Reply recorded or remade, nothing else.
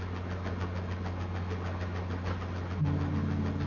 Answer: recorded